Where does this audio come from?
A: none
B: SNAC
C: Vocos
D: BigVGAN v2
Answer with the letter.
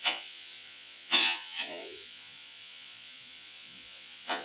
C